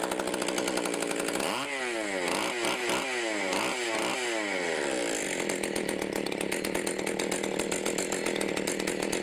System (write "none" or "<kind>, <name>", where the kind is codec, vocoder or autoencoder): none